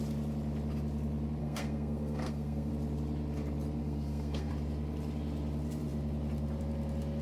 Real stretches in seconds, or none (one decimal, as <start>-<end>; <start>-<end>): 0.0-1.4; 2.7-3.8; 4.5-7.2